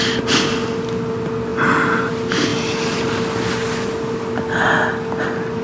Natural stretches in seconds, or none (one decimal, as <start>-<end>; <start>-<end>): 0.0-5.6